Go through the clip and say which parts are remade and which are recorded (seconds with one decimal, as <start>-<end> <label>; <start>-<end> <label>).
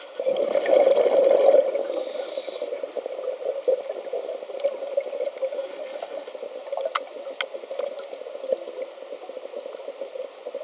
0.0-5.7 recorded; 5.7-6.3 remade; 6.3-10.6 recorded